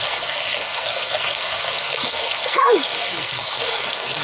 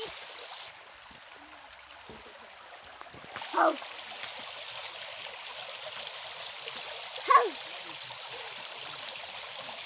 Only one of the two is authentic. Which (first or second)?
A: second